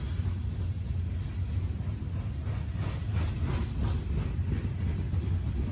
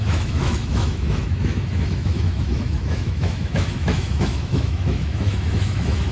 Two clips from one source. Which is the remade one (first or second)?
second